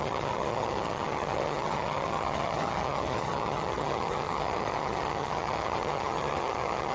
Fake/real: fake